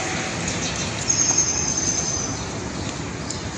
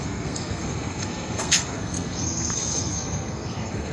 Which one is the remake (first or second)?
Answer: second